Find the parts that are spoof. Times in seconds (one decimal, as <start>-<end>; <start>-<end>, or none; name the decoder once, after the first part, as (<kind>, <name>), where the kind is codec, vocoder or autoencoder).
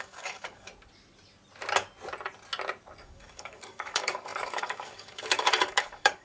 0.0-0.7 (codec, DAC); 3.0-6.2